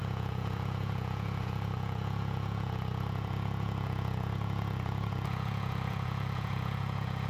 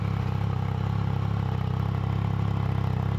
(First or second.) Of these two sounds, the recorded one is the second